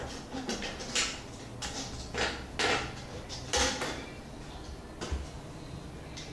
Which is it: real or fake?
real